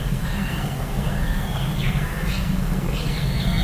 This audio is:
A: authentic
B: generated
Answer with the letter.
B